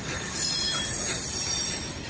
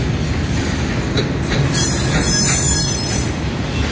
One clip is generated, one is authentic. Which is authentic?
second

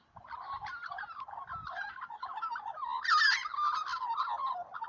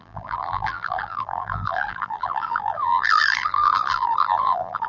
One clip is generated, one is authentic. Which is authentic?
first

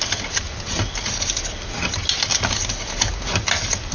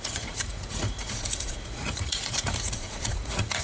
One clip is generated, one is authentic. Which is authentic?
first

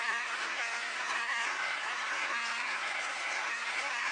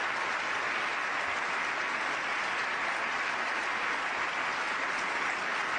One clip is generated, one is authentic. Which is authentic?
second